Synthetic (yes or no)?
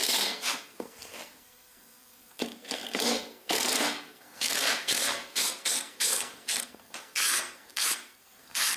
yes